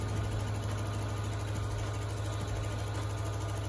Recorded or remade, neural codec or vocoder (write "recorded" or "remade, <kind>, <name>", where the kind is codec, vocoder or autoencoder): recorded